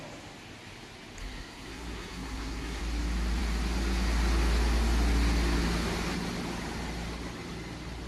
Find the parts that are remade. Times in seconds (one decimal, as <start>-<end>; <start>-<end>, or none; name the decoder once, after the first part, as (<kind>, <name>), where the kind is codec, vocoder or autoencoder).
1.2-2.8 (codec, SNAC)